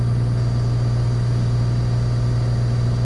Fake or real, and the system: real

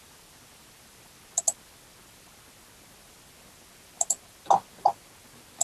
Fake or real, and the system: real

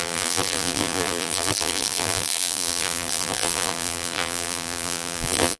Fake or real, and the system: fake, vocoder, BigVGAN v2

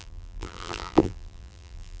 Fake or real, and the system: fake, vocoder, BigVGAN v2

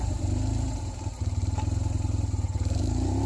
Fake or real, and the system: real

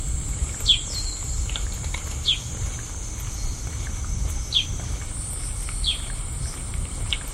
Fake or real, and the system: real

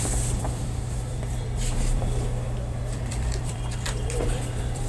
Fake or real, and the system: fake, vocoder, BigVGAN v2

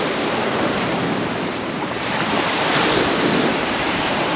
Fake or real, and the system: fake, vocoder, BigVGAN v2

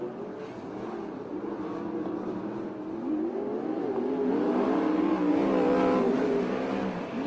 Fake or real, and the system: real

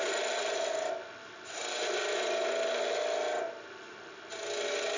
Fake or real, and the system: real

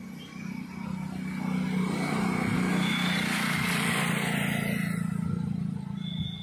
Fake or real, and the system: real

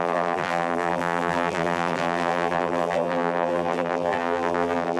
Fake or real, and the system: fake, vocoder, BigVGAN v2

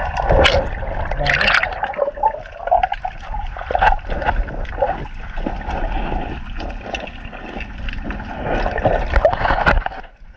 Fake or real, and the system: real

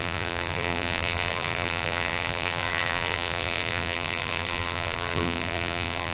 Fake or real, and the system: fake, vocoder, BigVGAN v2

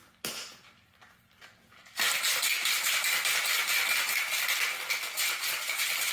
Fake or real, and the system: real